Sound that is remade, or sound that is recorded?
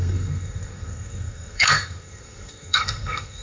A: remade